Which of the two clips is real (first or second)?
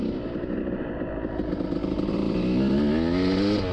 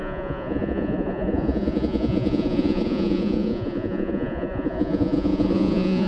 first